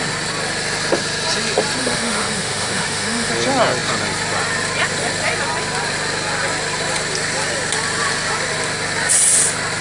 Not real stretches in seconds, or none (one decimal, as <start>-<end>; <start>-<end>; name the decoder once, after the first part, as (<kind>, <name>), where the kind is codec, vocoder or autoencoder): 1.8-3.3 (autoencoder, DAC-VAE)

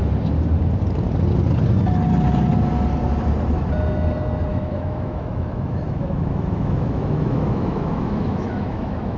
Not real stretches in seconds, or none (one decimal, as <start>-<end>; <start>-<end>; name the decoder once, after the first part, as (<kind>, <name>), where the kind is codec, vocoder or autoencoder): 4.5-9.2 (autoencoder, DAC-VAE)

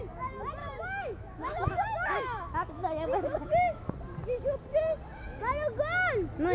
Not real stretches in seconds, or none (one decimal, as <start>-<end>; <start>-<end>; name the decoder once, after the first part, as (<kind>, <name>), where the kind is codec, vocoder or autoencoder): 0.6-3.9 (autoencoder, DAC-VAE)

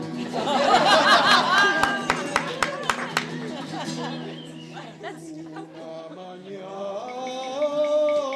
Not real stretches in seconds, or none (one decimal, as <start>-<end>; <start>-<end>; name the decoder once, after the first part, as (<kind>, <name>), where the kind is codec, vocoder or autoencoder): 5.9-6.5 (autoencoder, DAC-VAE)

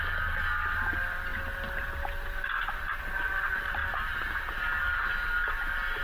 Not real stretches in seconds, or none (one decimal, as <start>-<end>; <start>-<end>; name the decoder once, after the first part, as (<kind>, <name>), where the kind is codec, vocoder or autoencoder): none